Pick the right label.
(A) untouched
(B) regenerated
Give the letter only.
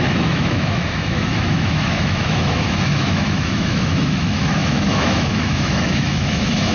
B